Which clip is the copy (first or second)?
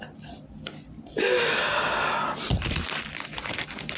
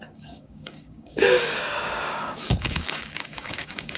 second